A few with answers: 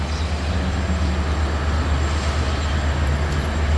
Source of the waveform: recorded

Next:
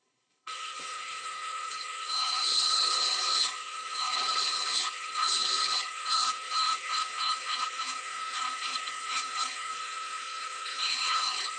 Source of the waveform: remade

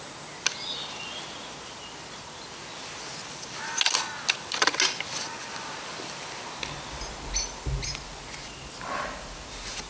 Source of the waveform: recorded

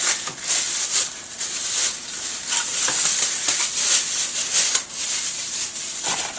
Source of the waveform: recorded